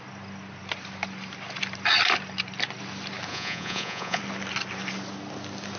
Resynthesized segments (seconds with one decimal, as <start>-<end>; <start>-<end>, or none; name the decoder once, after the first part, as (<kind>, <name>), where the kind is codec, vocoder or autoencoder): 3.3-4.2 (vocoder, Vocos)